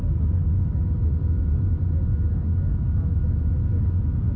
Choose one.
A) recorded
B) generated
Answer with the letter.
A